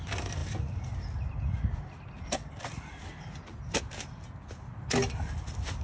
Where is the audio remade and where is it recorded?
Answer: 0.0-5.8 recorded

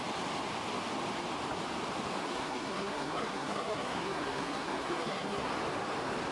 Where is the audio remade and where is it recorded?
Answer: 0.0-2.2 recorded; 2.2-5.5 remade; 5.5-6.3 recorded

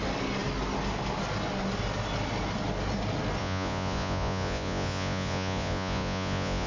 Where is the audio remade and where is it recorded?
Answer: 0.0-3.4 recorded; 3.4-6.7 remade

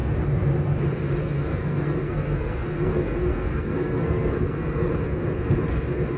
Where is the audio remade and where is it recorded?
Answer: 0.0-1.5 recorded; 1.5-4.9 remade; 4.9-6.2 recorded

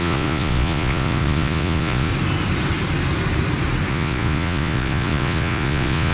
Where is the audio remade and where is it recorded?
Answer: 0.0-2.1 remade; 2.1-3.9 recorded; 3.9-6.1 remade

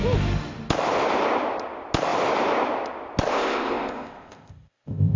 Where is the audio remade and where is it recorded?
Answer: 0.0-3.3 recorded; 3.3-5.2 remade

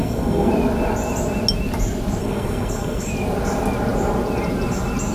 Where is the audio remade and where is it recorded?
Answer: 0.0-0.5 remade; 0.5-2.2 recorded; 2.2-3.1 remade; 3.1-5.1 recorded

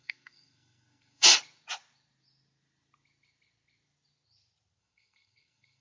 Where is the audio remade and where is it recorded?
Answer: 0.0-1.3 remade; 1.3-4.8 recorded; 4.8-5.8 remade